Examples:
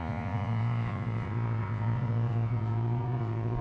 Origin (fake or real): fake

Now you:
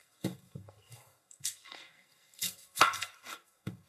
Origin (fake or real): fake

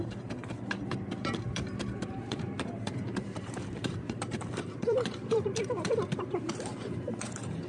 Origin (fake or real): fake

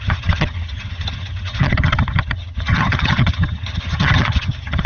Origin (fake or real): fake